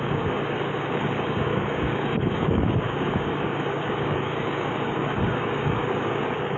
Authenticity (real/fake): fake